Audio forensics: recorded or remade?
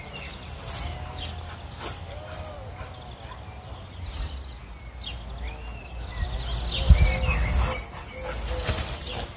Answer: recorded